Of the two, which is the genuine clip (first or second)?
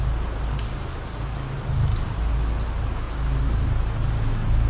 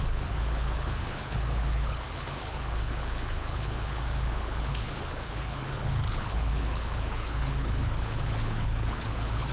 first